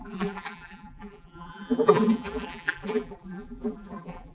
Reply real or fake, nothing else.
fake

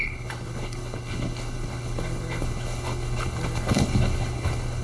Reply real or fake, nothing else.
fake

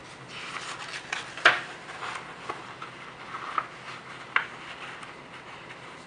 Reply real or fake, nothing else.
real